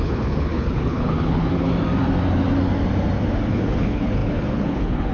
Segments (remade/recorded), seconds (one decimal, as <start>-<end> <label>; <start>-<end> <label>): 0.0-1.7 remade; 1.7-3.5 recorded; 3.5-5.1 remade